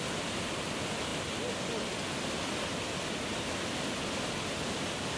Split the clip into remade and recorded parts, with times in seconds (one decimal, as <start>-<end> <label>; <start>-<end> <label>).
0.0-5.2 recorded